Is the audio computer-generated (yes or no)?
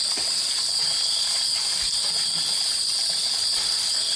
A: no